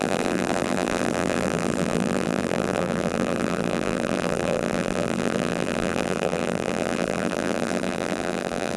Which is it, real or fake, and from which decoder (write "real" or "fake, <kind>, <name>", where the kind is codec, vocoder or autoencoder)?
fake, vocoder, BigVGAN v2